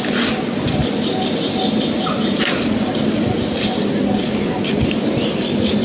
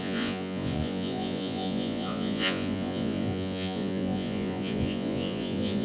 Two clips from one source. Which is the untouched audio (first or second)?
first